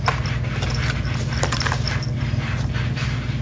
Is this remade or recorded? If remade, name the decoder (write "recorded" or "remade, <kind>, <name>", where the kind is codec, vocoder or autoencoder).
recorded